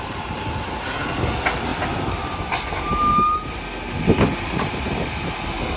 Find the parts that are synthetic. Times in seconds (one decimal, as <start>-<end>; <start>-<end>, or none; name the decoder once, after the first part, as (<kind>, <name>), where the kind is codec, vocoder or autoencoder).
none